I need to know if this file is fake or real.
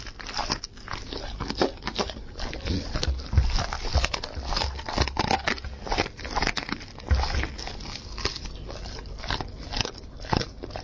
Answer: real